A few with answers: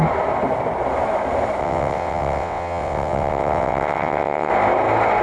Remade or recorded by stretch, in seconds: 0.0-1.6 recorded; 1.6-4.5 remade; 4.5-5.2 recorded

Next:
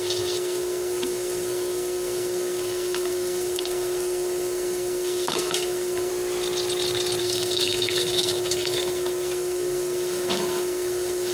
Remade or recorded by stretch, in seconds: 0.0-6.1 remade; 6.1-7.2 recorded; 7.2-11.3 remade

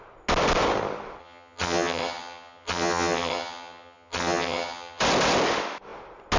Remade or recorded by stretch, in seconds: 0.0-1.2 recorded; 1.2-5.0 remade; 5.0-6.4 recorded

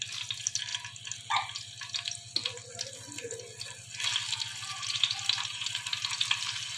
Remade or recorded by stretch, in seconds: 0.0-4.7 recorded; 4.7-6.8 remade